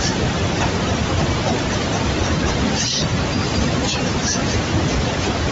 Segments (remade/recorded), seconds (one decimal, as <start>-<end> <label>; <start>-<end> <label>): 0.0-5.5 recorded